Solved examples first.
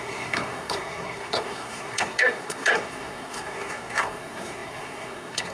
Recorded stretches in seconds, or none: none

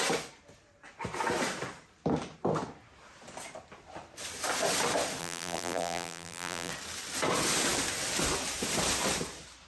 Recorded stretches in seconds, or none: 0.0-5.2; 6.7-9.7

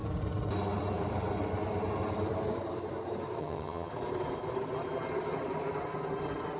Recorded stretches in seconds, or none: 0.0-3.4; 3.9-6.6

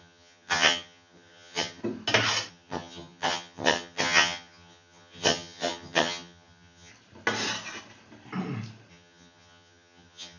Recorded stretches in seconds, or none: 1.8-2.5; 6.9-8.9

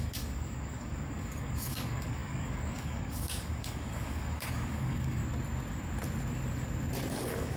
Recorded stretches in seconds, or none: 5.2-7.1

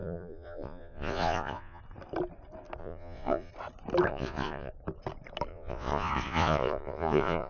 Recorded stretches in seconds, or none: 1.8-2.8; 3.5-4.1; 4.7-5.5

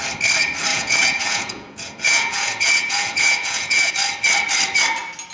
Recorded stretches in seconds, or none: 0.0-0.7; 3.9-5.3

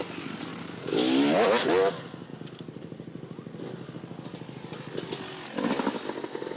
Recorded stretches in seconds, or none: 0.0-6.6